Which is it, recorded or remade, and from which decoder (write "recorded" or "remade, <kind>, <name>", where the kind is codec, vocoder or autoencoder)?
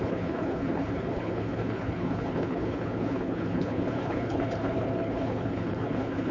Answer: remade, codec, HILCodec